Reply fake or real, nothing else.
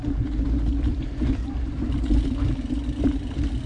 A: real